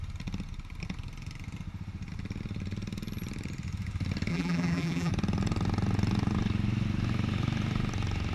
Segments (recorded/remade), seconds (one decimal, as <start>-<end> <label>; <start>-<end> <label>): 0.0-4.3 recorded; 4.3-5.1 remade; 5.1-8.3 recorded